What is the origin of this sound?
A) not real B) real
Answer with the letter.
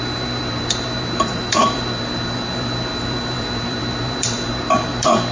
A